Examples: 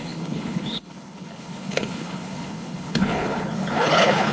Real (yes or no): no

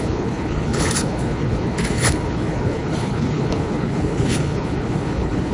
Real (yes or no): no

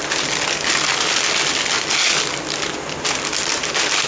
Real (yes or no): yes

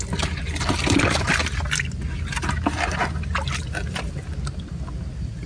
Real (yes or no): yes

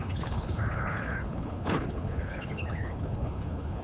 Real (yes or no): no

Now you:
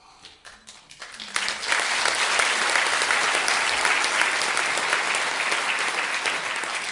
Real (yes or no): yes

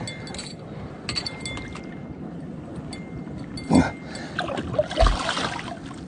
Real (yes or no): yes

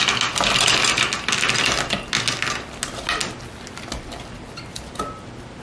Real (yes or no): yes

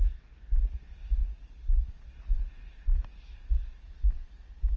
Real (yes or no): yes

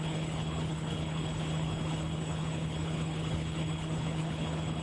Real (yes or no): no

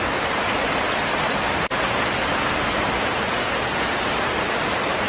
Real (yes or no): yes